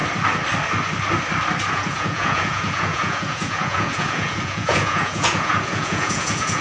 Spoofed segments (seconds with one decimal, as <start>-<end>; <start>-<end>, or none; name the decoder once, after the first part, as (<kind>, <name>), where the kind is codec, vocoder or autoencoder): 1.7-6.6 (vocoder, Vocos)